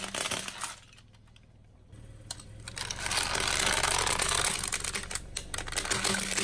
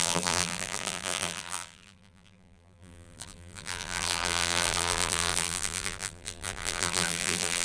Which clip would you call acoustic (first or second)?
first